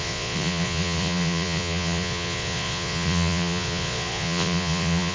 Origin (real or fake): fake